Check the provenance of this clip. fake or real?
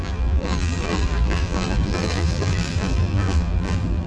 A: fake